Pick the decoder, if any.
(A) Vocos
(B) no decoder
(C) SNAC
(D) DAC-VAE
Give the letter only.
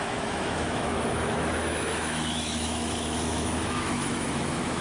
D